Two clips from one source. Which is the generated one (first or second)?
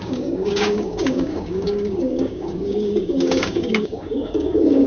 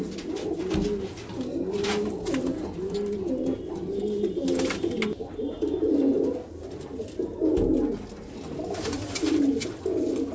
first